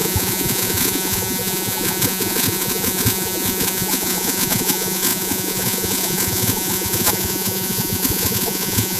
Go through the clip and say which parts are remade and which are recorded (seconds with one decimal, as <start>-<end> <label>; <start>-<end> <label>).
0.0-9.0 remade